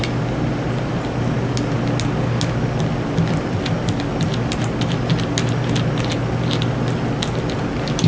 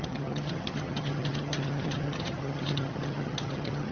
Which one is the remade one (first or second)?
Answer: second